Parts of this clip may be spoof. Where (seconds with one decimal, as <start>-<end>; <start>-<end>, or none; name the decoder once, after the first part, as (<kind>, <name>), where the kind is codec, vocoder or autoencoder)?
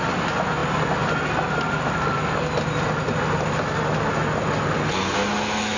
none